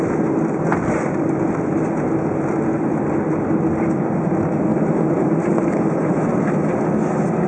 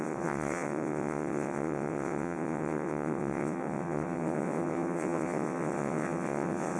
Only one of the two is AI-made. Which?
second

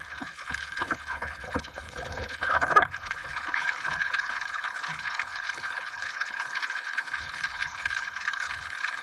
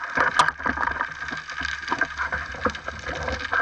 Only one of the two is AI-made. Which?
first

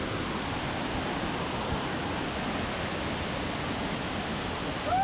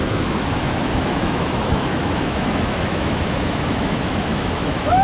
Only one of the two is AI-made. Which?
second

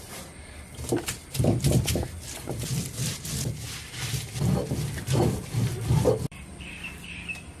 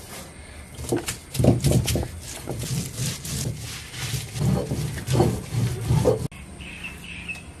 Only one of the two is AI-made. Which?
first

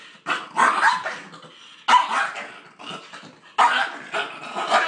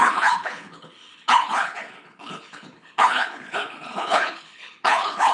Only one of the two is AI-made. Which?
second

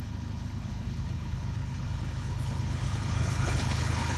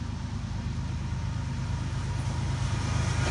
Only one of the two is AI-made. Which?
first